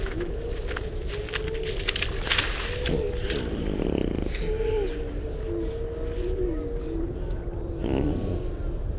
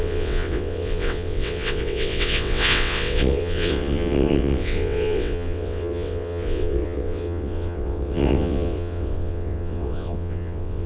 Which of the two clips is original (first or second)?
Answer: first